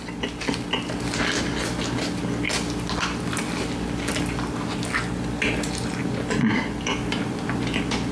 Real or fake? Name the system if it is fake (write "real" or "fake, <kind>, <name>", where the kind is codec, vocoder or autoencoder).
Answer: real